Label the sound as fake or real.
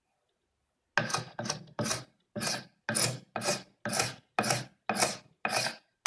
real